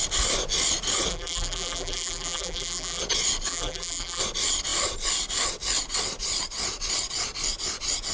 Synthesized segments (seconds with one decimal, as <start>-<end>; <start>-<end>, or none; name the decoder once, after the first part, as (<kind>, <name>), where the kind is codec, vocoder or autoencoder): 1.1-3.0 (vocoder, BigVGAN v2); 3.5-4.2